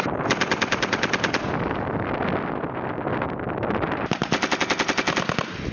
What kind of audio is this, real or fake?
real